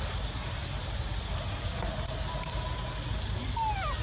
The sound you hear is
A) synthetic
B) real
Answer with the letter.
B